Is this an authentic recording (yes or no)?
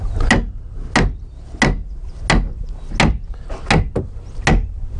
yes